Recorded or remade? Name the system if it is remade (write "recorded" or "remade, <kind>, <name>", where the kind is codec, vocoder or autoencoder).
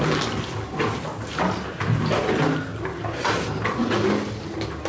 recorded